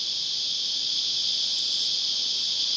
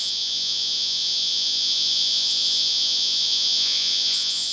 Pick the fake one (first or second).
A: second